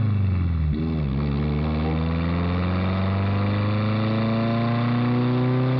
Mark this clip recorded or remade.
recorded